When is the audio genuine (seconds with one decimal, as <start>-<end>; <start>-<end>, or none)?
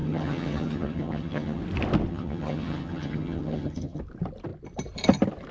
1.6-2.1; 4.0-5.5